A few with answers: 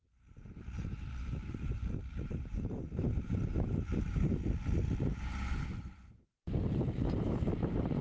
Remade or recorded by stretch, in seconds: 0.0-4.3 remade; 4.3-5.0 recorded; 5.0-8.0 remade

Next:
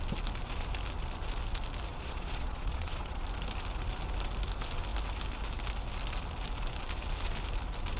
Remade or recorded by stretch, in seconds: 0.0-1.9 recorded; 1.9-3.2 remade; 3.2-8.0 recorded

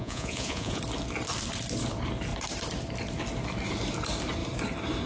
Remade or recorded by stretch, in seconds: 0.0-0.8 remade; 0.8-5.1 recorded

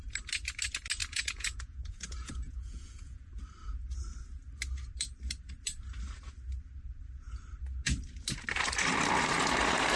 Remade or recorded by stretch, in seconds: 0.0-1.0 recorded; 1.0-3.3 remade; 3.3-10.0 recorded

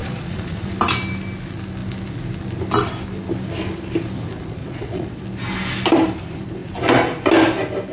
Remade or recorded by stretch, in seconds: 0.0-0.7 remade; 0.7-4.6 recorded; 4.6-5.2 remade; 5.2-7.9 recorded

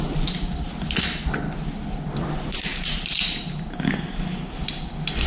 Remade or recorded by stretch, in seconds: 0.0-5.3 recorded

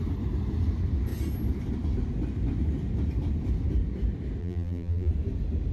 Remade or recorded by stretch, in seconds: 0.0-4.4 recorded; 4.4-5.1 remade; 5.1-5.7 recorded

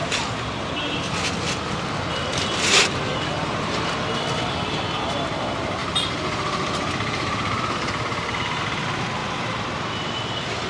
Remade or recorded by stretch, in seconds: 0.0-3.1 recorded; 3.1-4.1 remade; 4.1-5.8 recorded; 5.8-8.6 remade; 8.6-9.2 recorded; 9.2-10.7 remade